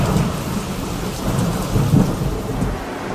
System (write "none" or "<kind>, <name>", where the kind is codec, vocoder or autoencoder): none